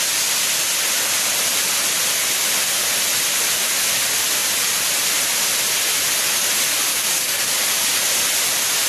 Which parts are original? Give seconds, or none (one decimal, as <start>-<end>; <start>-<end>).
0.0-6.9; 7.5-8.9